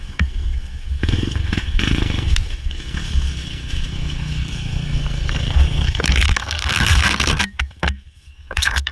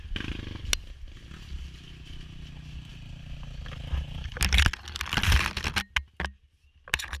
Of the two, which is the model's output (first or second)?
first